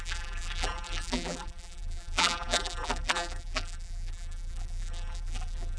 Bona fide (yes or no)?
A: no